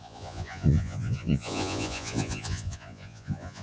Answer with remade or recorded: remade